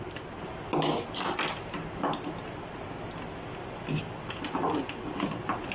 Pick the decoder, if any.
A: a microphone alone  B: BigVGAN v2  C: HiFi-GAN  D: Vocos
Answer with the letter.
A